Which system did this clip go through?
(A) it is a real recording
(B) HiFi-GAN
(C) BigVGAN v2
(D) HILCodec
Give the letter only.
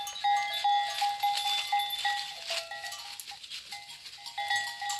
A